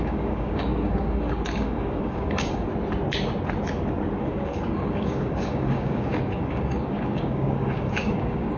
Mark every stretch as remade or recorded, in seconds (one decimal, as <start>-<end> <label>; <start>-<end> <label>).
0.0-2.7 remade; 2.7-4.2 recorded; 4.2-8.6 remade